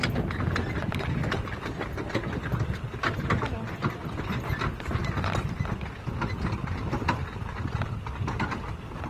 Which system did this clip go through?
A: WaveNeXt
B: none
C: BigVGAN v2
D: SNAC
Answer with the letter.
B